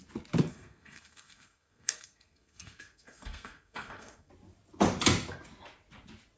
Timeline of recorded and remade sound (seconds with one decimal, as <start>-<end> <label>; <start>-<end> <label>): 0.0-0.5 recorded; 0.5-4.3 remade; 4.3-6.4 recorded